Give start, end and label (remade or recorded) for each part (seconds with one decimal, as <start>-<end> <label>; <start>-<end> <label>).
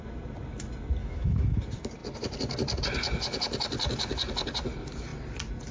0.0-1.0 recorded; 1.0-1.6 remade; 1.6-5.7 recorded